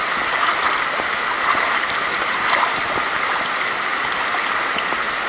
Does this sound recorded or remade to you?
recorded